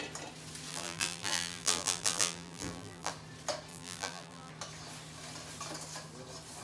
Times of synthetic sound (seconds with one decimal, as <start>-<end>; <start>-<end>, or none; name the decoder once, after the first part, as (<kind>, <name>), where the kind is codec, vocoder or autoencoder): 0.7-3.1 (vocoder, BigVGAN v2); 3.7-4.5